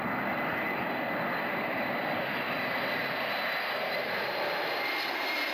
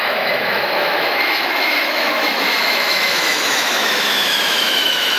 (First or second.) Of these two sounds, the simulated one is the second